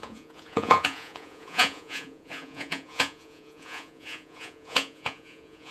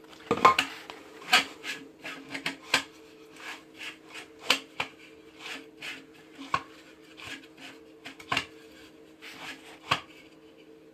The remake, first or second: first